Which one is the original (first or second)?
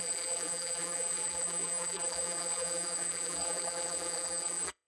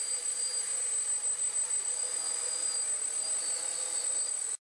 second